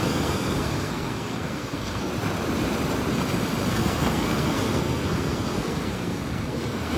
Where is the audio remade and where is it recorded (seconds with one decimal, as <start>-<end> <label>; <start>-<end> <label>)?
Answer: 0.0-2.1 remade; 2.1-3.7 recorded; 3.7-7.0 remade